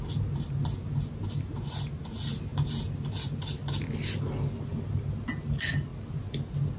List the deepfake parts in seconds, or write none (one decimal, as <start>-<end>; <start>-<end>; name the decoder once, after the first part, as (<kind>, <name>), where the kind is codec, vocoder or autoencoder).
none